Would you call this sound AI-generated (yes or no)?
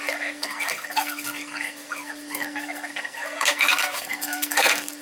yes